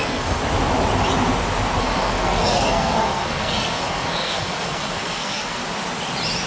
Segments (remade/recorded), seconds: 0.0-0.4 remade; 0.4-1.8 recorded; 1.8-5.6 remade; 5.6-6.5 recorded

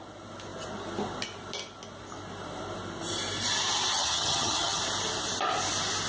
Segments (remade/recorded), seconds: 0.0-3.9 recorded; 3.9-4.8 remade; 4.8-6.1 recorded

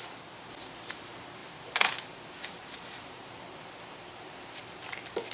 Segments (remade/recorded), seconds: 0.0-1.4 recorded; 1.4-4.6 remade; 4.6-5.3 recorded

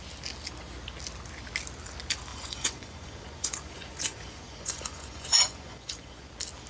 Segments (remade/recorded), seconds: 0.0-2.3 recorded; 2.3-6.3 remade; 6.3-6.7 recorded

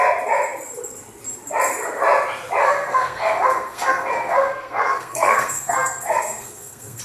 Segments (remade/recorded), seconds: 0.0-2.6 recorded; 2.6-7.0 remade

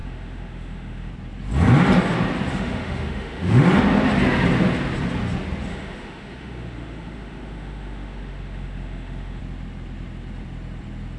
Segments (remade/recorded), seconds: 0.0-1.1 remade; 1.1-2.5 recorded; 2.5-3.6 remade; 3.6-5.7 recorded; 5.7-9.4 remade; 9.4-11.2 recorded

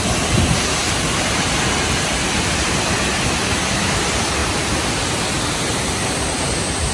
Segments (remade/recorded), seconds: 0.0-6.9 recorded